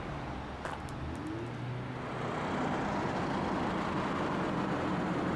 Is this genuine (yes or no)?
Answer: yes